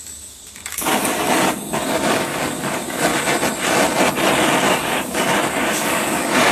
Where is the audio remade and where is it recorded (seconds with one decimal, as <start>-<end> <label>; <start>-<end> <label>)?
0.0-3.1 remade; 3.1-4.7 recorded; 4.7-6.5 remade